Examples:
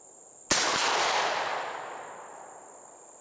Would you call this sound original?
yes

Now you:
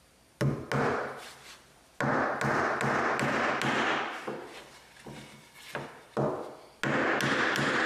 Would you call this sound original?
yes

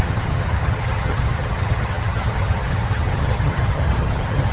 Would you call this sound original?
no